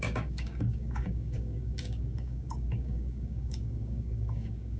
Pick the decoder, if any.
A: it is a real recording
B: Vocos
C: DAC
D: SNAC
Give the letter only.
C